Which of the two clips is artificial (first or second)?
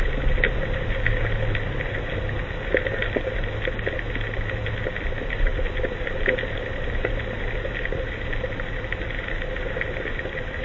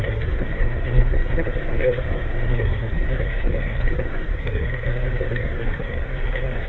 second